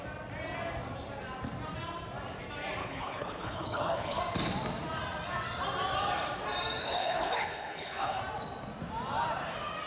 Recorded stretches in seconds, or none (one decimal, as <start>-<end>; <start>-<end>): 0.0-2.8; 4.2-6.8; 8.2-9.9